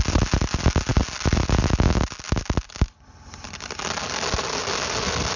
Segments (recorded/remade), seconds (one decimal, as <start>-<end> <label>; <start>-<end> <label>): 0.0-5.4 recorded

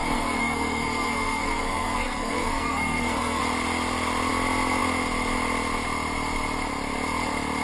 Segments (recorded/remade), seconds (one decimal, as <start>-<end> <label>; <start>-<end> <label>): 0.0-3.4 remade; 3.4-7.6 recorded

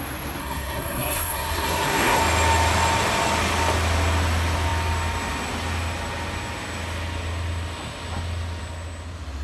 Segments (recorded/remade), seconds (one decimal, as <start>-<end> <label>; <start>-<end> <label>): 0.0-0.4 recorded; 0.4-2.2 remade; 2.2-9.4 recorded

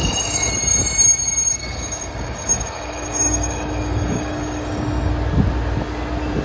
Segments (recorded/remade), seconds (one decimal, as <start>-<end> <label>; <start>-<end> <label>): 0.0-0.5 remade; 0.5-1.5 recorded; 1.5-5.1 remade; 5.1-6.4 recorded